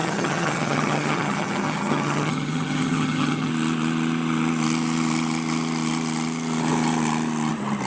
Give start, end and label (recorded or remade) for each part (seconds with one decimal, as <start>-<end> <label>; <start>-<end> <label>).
0.0-3.5 remade; 3.5-7.9 recorded